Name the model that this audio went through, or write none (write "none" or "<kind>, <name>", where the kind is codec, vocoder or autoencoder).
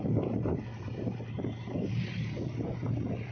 none